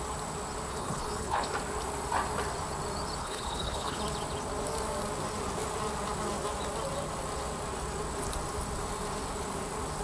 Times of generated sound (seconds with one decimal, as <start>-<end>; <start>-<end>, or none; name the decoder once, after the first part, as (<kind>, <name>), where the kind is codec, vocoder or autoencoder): 0.7-1.5 (codec, HILCodec); 3.2-4.0